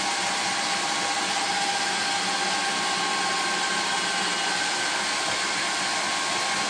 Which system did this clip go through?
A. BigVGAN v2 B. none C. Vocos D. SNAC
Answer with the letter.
B